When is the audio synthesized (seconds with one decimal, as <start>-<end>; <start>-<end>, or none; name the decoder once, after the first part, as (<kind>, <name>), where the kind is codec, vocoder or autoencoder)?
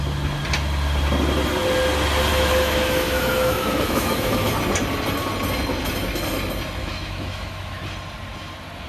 2.3-4.5 (autoencoder, DAC-VAE); 6.8-7.8